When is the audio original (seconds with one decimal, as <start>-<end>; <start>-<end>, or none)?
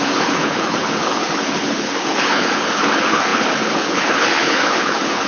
none